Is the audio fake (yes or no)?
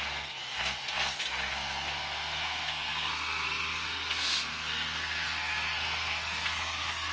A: yes